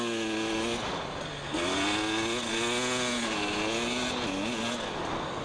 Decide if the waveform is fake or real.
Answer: real